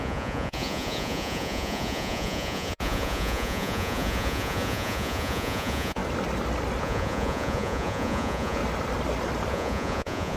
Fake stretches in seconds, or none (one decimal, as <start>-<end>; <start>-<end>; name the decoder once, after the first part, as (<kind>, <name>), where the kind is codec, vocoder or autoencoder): 0.0-6.0 (vocoder, Vocos); 6.8-8.6; 9.5-10.4

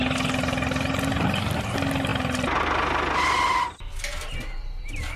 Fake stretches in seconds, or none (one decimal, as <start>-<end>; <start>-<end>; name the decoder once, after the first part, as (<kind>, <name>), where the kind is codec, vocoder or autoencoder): none

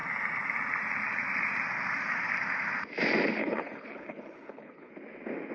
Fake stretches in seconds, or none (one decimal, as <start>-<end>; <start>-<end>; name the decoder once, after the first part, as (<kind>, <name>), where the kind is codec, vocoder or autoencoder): 3.4-4.9 (codec, HILCodec)

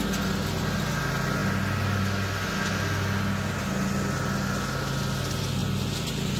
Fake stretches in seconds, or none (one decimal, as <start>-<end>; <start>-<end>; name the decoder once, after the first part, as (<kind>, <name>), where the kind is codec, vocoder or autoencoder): none

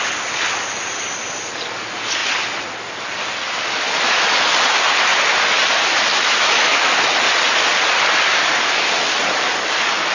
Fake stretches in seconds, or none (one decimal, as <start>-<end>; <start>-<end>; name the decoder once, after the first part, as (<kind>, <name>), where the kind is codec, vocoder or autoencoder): 6.1-7.0 (autoencoder, DAC-VAE)

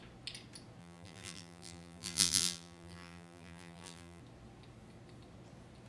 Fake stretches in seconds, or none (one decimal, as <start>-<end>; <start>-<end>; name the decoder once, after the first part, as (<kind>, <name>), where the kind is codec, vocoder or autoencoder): 0.8-4.2 (vocoder, BigVGAN v2)